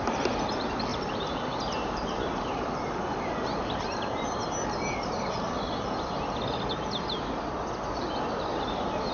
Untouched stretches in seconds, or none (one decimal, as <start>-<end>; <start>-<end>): 0.0-0.9; 6.1-8.5